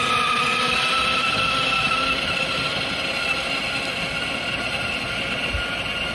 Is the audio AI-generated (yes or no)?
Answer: no